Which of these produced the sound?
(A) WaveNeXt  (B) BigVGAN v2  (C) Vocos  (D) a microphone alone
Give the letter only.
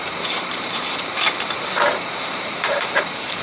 B